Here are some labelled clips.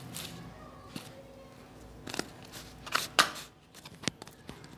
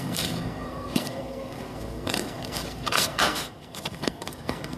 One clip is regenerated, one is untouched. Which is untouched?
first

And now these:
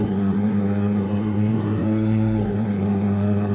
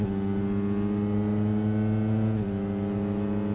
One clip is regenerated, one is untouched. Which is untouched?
second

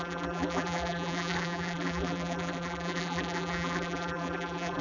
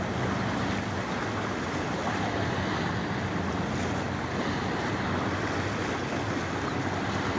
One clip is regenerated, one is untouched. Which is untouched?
second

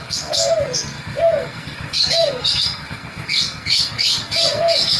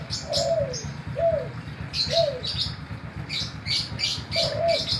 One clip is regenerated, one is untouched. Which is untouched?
second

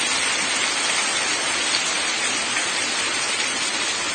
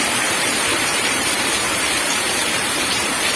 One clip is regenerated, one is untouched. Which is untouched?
first